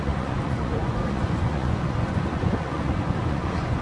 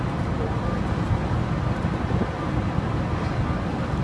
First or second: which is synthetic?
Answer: first